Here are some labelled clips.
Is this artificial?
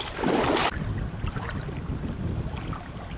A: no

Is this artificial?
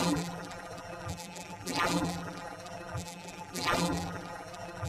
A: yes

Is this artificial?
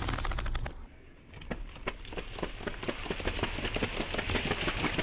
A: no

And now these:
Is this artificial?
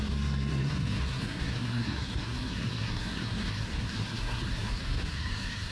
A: yes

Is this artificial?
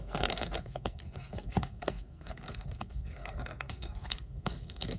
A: yes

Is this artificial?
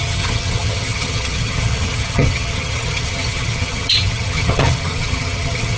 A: yes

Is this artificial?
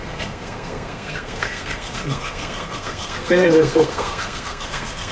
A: yes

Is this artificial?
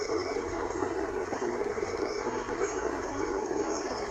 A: yes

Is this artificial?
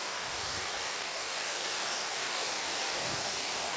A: yes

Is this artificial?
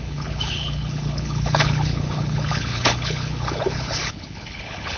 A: yes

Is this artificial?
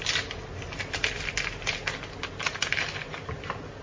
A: no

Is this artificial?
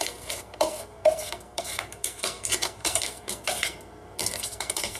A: yes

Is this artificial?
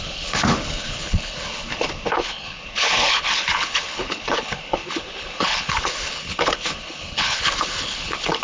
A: yes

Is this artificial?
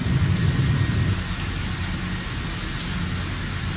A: no